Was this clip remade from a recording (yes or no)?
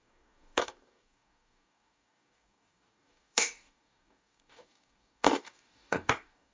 yes